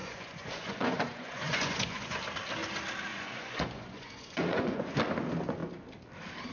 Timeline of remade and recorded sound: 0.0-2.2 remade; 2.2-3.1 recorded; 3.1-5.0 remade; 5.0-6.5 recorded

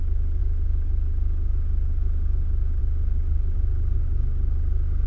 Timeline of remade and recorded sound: 0.0-5.1 recorded

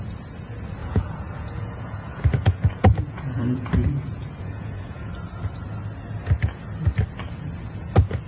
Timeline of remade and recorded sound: 0.0-0.8 recorded; 0.8-5.1 remade; 5.1-8.3 recorded

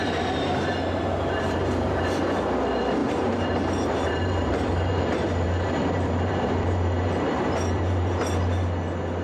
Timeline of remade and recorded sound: 0.0-2.1 remade; 2.1-3.0 recorded; 3.0-8.2 remade; 8.2-9.2 recorded

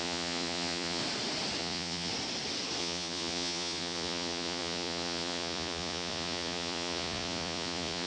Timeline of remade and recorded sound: 0.0-1.0 remade; 1.0-1.6 recorded; 1.6-2.1 remade; 2.1-2.8 recorded; 2.8-8.1 remade

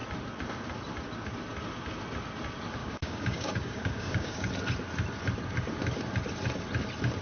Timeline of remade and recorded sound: 0.0-2.8 recorded; 2.8-4.5 remade; 4.5-7.2 recorded

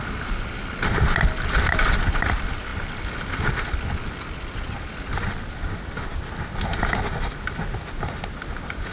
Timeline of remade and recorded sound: 0.0-8.9 recorded